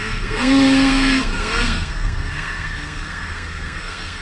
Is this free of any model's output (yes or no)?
no